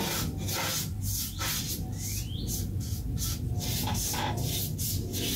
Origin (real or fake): real